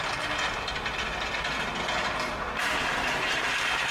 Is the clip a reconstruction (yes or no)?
no